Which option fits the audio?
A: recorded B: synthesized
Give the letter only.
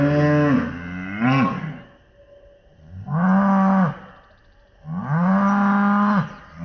A